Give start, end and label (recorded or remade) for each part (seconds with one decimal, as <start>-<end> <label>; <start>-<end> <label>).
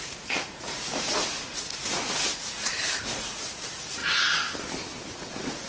0.0-4.0 remade; 4.0-5.1 recorded; 5.1-5.7 remade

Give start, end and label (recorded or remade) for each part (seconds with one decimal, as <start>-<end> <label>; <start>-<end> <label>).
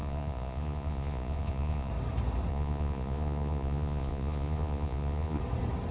0.0-1.9 remade; 1.9-2.5 recorded; 2.5-5.4 remade; 5.4-5.9 recorded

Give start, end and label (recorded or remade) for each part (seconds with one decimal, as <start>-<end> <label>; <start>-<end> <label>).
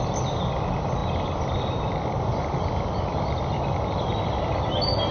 0.0-5.1 recorded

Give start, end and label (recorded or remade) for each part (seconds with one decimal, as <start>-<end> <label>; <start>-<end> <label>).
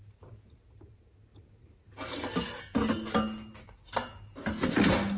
0.0-5.2 recorded